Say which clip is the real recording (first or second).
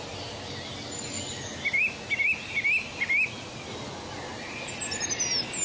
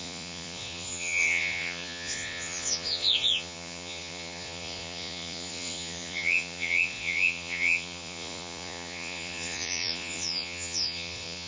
first